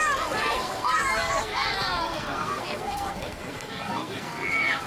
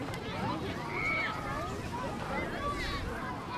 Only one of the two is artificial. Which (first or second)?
first